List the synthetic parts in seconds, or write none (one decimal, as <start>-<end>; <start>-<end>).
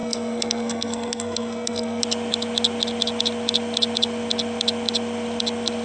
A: 0.0-2.0